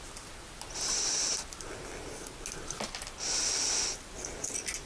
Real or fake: real